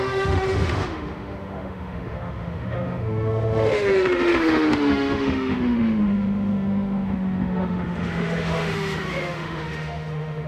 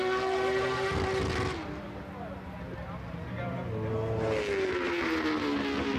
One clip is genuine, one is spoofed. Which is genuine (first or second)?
second